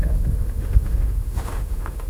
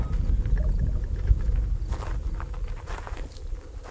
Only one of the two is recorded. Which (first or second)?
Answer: second